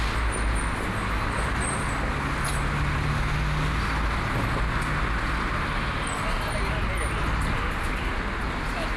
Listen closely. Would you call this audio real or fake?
real